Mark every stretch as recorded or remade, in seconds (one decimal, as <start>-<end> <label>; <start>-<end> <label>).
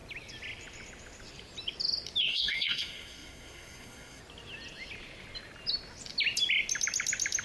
0.0-2.2 recorded; 2.2-4.2 remade; 4.2-7.4 recorded